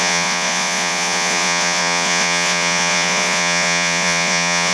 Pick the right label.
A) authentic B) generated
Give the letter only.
B